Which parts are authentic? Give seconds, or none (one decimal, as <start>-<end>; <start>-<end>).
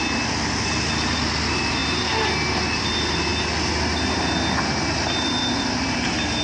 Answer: 0.0-6.4